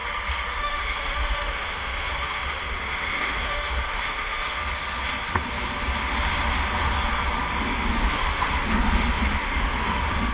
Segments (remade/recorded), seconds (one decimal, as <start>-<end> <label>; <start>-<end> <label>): 0.0-0.6 recorded; 0.6-4.6 remade; 4.6-7.9 recorded; 7.9-10.3 remade